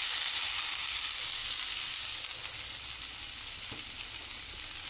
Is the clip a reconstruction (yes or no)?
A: no